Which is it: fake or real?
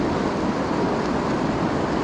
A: real